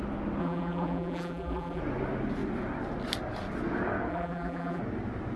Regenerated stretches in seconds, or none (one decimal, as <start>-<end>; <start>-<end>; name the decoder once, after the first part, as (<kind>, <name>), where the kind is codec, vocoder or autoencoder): 0.4-1.8 (vocoder, BigVGAN v2); 4.1-4.8